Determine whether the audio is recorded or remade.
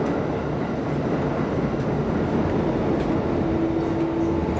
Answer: recorded